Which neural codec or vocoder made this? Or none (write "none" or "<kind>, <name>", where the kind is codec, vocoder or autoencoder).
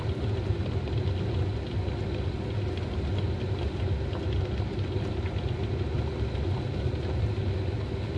none